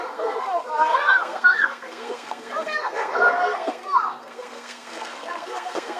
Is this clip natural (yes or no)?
no